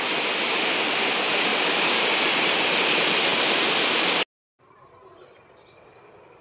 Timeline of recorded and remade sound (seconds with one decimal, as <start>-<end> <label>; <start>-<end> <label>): 0.0-6.4 recorded